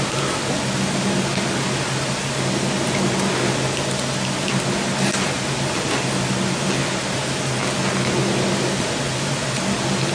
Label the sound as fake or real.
real